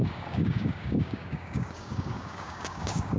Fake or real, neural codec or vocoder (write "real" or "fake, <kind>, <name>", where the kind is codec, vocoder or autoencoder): fake, codec, DAC